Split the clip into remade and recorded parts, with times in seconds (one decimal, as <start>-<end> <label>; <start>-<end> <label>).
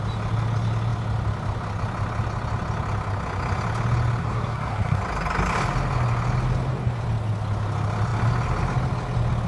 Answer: 0.0-4.2 recorded; 4.2-5.0 remade; 5.0-9.5 recorded